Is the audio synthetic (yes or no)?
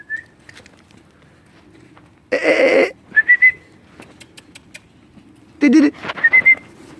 no